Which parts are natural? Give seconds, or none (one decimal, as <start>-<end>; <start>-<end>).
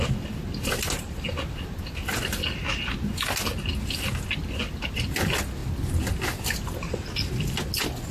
0.0-8.1